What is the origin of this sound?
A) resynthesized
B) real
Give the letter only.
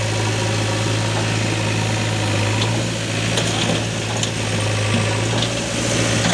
B